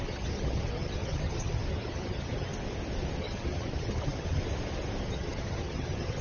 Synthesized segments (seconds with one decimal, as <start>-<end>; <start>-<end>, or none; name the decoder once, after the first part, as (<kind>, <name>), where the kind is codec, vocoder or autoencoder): 0.0-2.5 (vocoder, HiFi-GAN); 3.2-4.4; 5.0-6.2